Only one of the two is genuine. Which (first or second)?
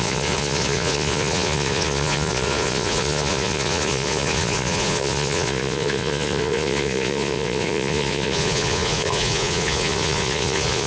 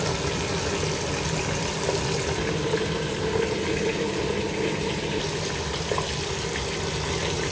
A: second